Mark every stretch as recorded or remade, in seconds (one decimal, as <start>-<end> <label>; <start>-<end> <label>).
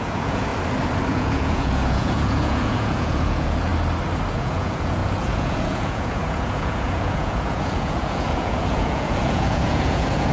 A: 0.0-0.5 remade; 0.5-1.1 recorded; 1.1-3.7 remade; 3.7-4.3 recorded; 4.3-10.3 remade